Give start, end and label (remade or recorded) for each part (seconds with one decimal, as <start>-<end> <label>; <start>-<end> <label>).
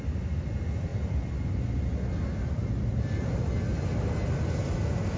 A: 0.0-5.2 recorded